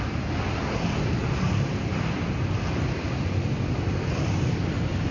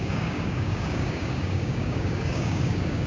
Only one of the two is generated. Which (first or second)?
second